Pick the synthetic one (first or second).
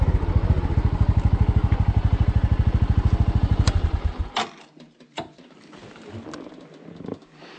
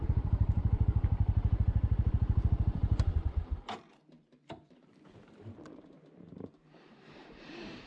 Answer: second